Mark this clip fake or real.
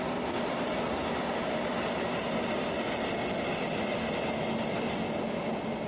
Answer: real